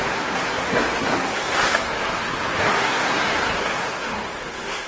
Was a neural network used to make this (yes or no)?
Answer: yes